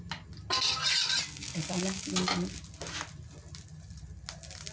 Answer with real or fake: real